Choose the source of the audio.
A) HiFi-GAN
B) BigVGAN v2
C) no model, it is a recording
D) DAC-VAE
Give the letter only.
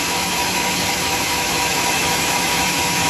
D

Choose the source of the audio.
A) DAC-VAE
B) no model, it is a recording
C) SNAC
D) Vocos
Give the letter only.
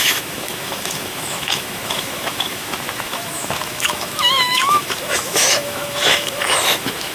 A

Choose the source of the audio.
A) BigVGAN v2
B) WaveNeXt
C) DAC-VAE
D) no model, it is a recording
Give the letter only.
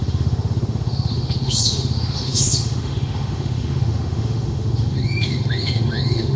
C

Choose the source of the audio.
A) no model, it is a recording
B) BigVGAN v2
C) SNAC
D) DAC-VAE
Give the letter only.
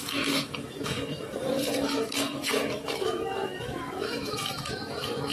D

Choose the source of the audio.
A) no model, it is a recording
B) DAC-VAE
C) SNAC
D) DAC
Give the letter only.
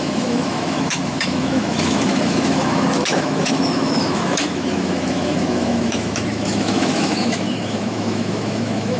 B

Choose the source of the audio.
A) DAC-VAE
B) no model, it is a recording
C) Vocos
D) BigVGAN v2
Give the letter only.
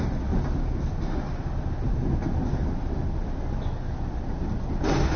B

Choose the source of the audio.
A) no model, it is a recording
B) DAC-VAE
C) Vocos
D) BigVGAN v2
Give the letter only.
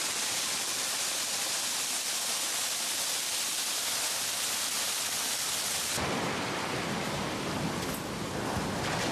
A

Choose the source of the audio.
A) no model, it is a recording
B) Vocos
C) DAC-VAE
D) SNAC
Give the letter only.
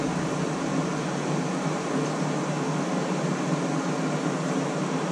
A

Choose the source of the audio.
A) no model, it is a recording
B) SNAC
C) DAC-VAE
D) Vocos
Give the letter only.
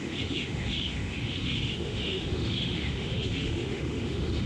C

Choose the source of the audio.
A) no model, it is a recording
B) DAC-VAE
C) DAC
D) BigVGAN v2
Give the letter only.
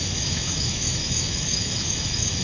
B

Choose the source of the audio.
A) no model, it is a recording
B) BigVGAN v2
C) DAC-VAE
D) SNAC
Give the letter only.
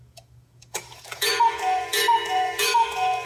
C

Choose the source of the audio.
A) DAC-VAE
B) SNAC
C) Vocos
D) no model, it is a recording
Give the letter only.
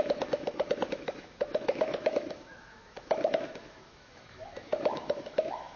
A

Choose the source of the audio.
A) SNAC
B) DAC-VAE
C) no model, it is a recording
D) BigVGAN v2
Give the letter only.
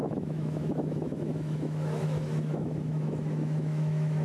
B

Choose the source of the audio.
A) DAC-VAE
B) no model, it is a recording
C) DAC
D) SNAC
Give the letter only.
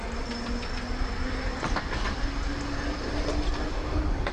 B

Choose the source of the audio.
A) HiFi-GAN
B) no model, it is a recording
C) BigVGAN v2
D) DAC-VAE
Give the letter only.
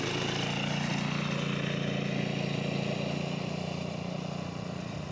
B